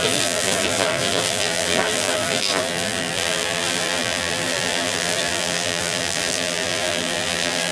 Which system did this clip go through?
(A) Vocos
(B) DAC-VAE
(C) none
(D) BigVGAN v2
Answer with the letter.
D